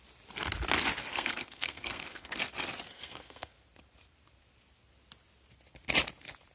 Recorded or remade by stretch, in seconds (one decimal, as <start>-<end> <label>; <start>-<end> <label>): 0.0-1.1 recorded; 1.1-2.4 remade; 2.4-2.9 recorded; 2.9-3.5 remade; 3.5-6.5 recorded